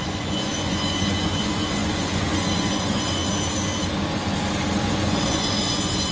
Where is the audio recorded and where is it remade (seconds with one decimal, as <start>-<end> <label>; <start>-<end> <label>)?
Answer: 0.0-3.2 remade; 3.2-4.8 recorded; 4.8-6.1 remade